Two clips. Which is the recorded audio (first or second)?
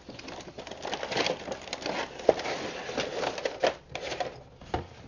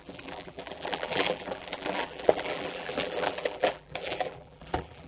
first